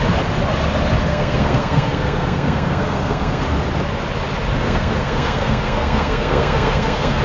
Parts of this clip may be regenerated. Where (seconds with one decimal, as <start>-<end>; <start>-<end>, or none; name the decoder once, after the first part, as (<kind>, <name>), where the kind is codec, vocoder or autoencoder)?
1.1-3.4 (codec, SNAC); 4.5-7.2